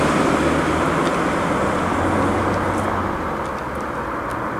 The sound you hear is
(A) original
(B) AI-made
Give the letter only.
A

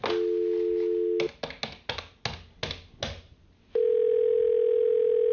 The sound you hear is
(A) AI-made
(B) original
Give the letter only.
B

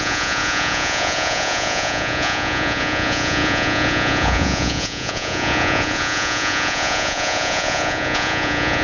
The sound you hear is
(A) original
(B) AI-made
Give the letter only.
B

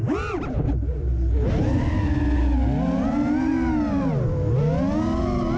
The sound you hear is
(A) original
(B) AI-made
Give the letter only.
A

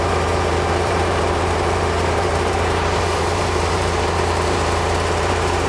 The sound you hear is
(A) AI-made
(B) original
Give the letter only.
A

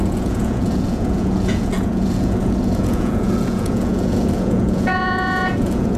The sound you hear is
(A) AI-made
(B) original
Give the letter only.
A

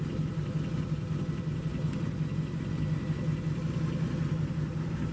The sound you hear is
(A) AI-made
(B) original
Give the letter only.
B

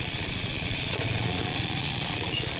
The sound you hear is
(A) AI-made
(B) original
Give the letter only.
A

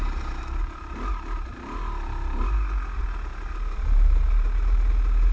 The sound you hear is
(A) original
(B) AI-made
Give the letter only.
A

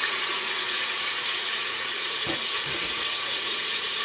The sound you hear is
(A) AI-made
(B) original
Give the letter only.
A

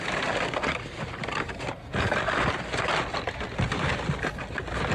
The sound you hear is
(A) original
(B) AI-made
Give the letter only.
A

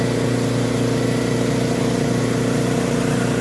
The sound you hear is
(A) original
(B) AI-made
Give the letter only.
A